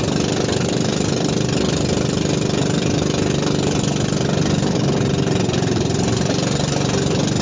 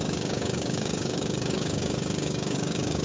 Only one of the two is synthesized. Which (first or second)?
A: second